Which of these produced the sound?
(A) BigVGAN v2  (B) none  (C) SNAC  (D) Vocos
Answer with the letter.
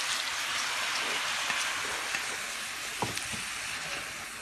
B